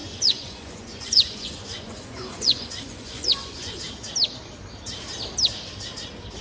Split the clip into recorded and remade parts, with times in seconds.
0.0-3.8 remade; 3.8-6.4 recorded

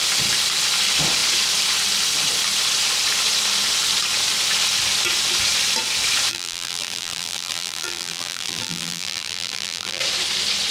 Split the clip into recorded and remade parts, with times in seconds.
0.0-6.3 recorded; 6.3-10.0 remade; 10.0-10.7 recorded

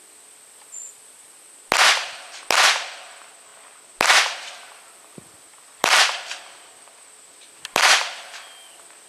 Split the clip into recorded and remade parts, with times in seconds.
0.0-9.1 recorded

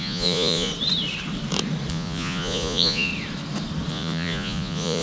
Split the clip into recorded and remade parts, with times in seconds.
0.0-0.7 remade; 0.7-1.9 recorded; 1.9-3.1 remade; 3.1-3.9 recorded; 3.9-5.0 remade